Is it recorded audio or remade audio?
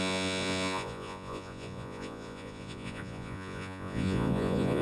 remade